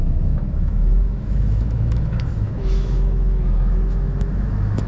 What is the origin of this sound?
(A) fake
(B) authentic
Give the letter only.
A